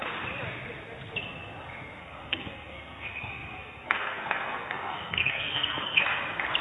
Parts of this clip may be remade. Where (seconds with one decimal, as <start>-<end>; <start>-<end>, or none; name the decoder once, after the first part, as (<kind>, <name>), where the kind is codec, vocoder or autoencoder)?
2.0-6.0 (codec, SNAC)